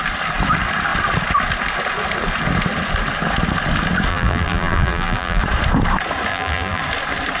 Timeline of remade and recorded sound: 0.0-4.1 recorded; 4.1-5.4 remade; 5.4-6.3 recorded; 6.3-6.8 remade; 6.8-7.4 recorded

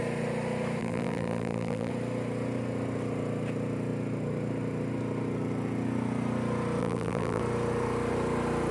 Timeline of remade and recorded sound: 0.0-0.8 recorded; 0.8-1.9 remade; 1.9-6.8 recorded; 6.8-7.4 remade; 7.4-8.7 recorded

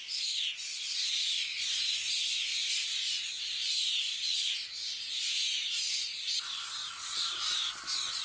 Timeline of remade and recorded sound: 0.0-4.4 recorded; 4.4-5.2 remade; 5.2-6.8 recorded; 6.8-7.7 remade; 7.7-8.2 recorded

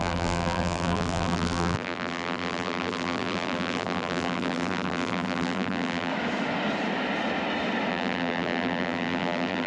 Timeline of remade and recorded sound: 0.0-6.1 remade; 6.1-7.9 recorded; 7.9-9.7 remade

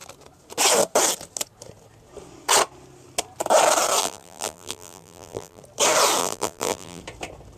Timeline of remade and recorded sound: 0.0-4.0 recorded; 4.0-5.6 remade; 5.6-6.2 recorded; 6.2-7.0 remade; 7.0-7.6 recorded

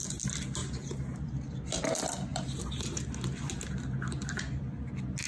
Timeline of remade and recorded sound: 0.0-0.6 recorded; 0.6-1.3 remade; 1.3-2.3 recorded; 2.3-3.1 remade; 3.1-5.3 recorded